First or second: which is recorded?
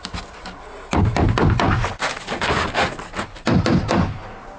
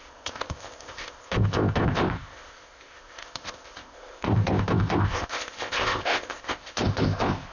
first